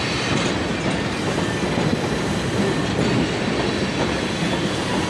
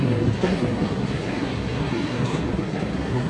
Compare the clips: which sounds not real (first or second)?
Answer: second